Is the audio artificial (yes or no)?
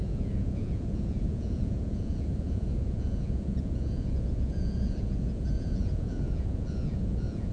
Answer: yes